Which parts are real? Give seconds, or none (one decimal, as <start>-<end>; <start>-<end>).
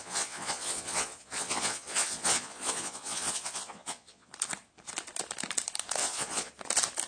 4.3-6.0; 6.5-7.1